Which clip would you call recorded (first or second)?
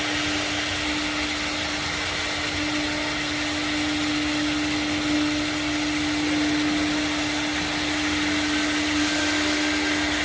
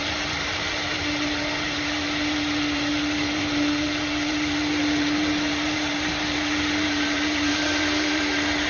first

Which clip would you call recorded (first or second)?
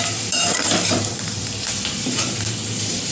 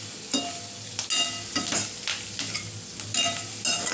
second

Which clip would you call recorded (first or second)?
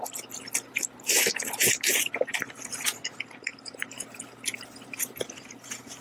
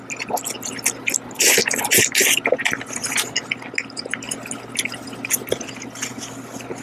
second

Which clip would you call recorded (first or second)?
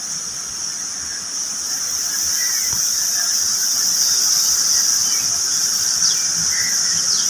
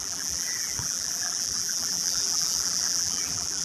first